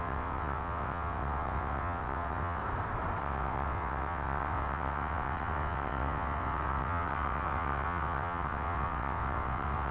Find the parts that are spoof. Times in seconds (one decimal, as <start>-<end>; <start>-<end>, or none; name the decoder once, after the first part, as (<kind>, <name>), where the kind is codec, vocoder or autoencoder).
0.0-2.6 (vocoder, WaveNeXt); 3.2-9.9